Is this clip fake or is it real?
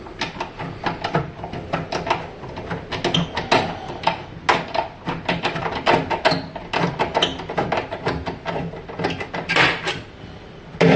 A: real